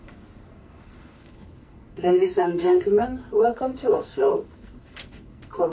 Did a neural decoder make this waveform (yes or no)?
yes